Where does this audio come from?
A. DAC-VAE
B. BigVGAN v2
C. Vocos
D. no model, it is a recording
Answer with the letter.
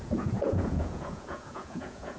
C